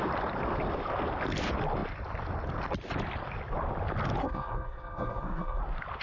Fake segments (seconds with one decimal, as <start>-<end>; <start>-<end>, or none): 4.2-5.6